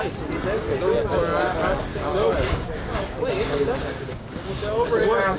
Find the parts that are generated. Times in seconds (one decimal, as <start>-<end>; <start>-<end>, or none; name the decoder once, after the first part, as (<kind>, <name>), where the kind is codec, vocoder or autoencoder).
1.9-5.4 (codec, DAC)